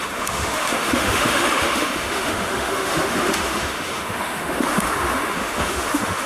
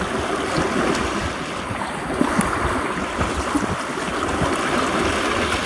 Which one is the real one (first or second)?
second